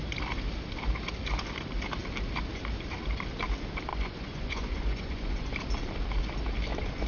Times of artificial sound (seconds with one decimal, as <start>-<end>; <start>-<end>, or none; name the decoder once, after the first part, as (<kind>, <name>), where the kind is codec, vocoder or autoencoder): 3.9-5.5 (vocoder, Vocos)